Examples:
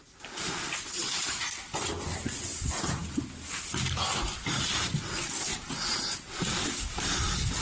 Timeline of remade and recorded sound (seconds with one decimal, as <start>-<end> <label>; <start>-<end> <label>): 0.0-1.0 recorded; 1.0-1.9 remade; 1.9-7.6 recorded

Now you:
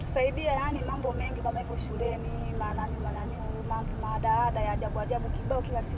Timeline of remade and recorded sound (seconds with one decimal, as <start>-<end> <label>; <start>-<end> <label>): 0.0-0.7 recorded; 0.7-2.2 remade; 2.2-2.7 recorded; 2.7-3.4 remade; 3.4-6.0 recorded

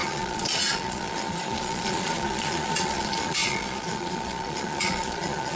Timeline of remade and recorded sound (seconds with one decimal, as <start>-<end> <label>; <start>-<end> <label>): 0.0-5.6 remade